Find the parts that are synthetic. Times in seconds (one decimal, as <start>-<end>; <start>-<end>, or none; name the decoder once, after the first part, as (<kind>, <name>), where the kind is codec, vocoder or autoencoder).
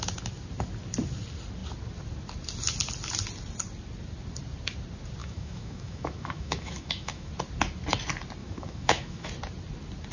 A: 5.2-7.3 (autoencoder, DAC-VAE); 8.4-9.3